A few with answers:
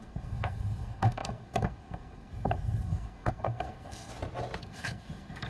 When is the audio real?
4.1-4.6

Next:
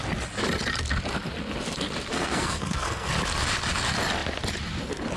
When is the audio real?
0.0-2.1; 3.1-5.2

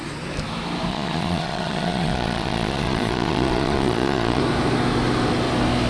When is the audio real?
0.0-0.9; 4.4-5.9

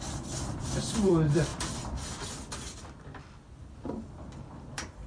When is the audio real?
1.5-4.6